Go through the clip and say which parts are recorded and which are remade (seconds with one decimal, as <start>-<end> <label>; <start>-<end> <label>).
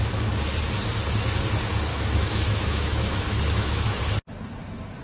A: 0.0-1.9 recorded; 1.9-4.0 remade; 4.0-5.0 recorded